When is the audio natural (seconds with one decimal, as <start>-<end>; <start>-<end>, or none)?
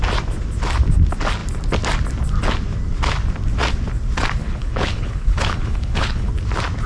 0.0-4.4; 6.3-6.9